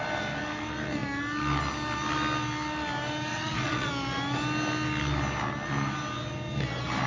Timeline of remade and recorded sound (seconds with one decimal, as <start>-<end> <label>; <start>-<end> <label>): 0.0-3.3 recorded; 3.3-3.9 remade; 3.9-7.1 recorded